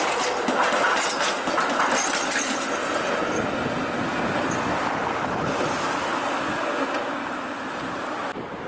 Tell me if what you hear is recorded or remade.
recorded